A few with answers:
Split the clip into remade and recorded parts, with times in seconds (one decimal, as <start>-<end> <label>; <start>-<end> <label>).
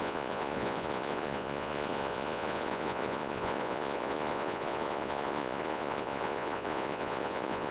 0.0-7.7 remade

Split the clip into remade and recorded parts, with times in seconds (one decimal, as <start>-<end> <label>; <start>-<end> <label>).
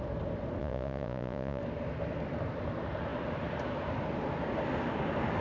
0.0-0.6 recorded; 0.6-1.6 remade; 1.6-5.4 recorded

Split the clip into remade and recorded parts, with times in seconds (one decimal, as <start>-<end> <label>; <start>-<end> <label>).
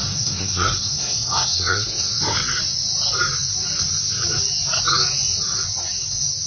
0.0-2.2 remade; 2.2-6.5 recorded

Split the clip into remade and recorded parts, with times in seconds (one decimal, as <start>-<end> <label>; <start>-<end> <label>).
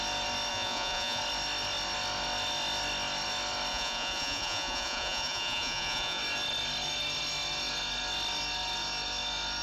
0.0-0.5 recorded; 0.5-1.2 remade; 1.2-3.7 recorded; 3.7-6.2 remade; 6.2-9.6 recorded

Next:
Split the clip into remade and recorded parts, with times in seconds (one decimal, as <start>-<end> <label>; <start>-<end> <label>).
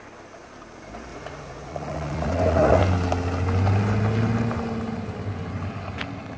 0.0-1.1 recorded; 1.1-2.8 remade; 2.8-6.4 recorded